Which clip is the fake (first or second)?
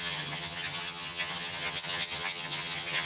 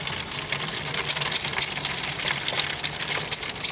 first